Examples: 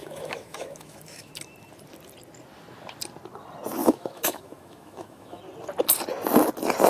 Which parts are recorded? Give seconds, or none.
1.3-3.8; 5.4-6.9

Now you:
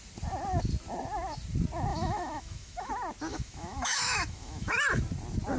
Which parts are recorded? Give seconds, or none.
0.0-1.9; 2.9-3.3; 5.0-5.6

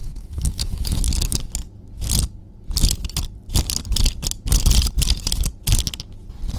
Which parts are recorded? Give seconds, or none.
1.0-6.6

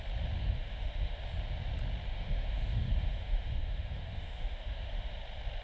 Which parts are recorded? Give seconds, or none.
0.0-0.4; 1.2-2.1; 5.1-5.6